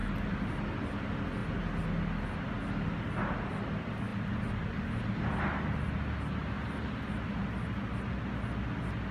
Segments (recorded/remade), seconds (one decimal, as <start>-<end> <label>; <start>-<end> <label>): 0.0-9.1 recorded